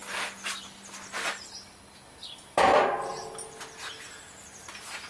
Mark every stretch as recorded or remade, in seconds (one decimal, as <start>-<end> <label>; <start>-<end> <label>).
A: 0.0-5.1 recorded